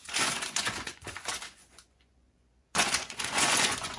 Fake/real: fake